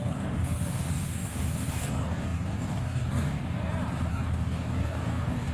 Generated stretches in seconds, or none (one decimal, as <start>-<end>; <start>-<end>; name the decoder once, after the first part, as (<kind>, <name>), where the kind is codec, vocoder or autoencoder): 0.0-3.4 (codec, DAC); 4.1-5.5